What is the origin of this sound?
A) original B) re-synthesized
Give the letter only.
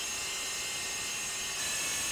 A